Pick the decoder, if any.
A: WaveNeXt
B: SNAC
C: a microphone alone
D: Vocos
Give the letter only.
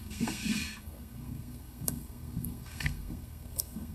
B